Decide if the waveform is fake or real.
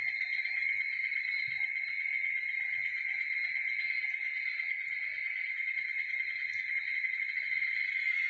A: real